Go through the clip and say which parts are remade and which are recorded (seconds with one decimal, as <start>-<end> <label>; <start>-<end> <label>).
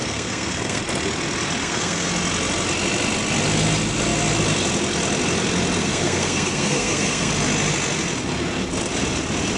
0.0-0.8 remade; 0.8-1.6 recorded; 1.6-2.1 remade; 2.1-5.8 recorded; 5.8-7.3 remade; 7.3-9.6 recorded